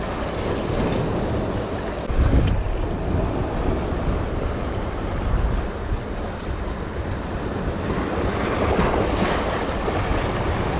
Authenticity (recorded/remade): recorded